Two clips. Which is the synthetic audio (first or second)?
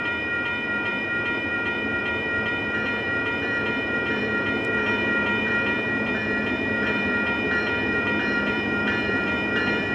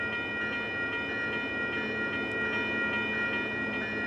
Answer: first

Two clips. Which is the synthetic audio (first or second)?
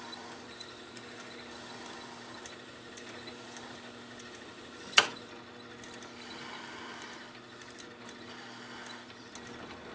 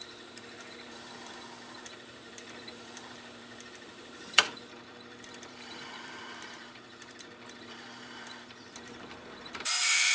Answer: second